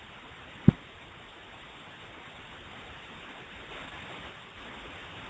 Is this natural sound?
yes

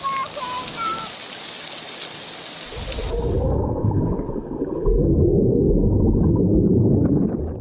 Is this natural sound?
yes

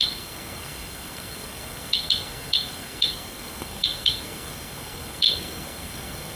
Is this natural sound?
no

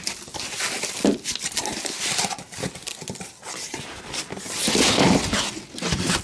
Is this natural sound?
yes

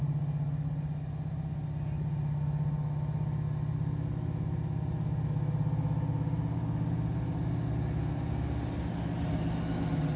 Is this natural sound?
yes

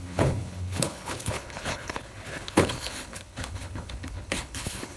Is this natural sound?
no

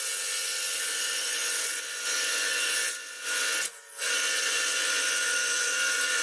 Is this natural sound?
no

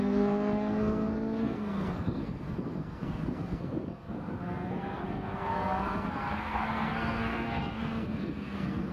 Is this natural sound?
no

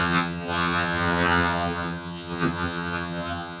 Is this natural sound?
no